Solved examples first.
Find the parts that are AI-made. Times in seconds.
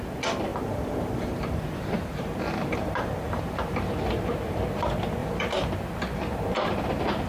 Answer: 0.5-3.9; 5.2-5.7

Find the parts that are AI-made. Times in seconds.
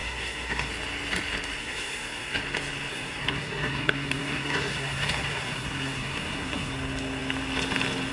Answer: 0.0-0.7; 1.6-2.4; 2.9-6.7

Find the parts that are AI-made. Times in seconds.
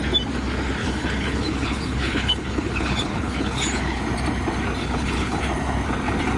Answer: 0.8-4.0; 4.8-5.4